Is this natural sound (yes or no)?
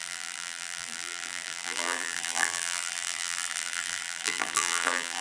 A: no